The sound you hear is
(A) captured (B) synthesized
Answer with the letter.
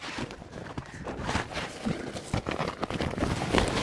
B